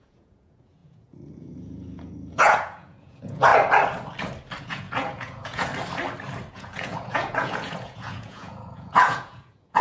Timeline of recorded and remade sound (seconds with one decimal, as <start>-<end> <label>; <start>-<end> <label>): 0.0-3.5 remade; 3.5-4.6 recorded; 4.6-5.7 remade; 5.7-6.5 recorded; 6.5-9.8 remade